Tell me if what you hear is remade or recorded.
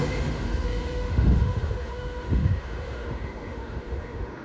remade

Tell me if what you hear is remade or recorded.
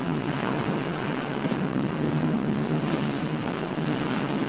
remade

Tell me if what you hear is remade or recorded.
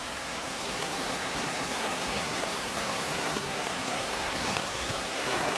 remade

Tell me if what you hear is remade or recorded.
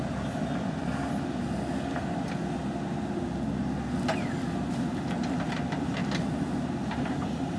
recorded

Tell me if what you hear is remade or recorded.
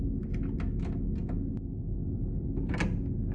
recorded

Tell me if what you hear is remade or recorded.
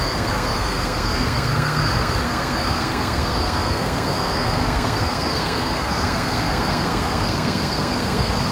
remade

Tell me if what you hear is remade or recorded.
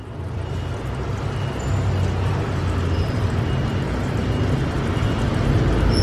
recorded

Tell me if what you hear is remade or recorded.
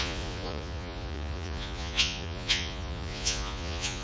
remade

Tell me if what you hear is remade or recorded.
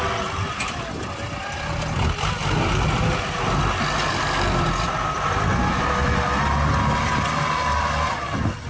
recorded